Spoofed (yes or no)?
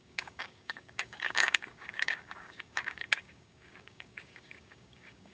yes